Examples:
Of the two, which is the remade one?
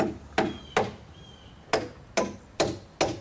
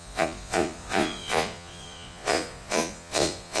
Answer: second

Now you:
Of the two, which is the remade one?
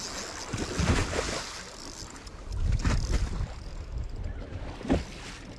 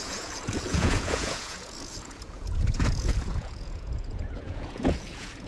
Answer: second